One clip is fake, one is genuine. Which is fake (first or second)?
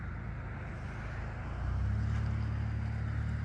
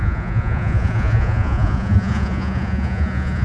second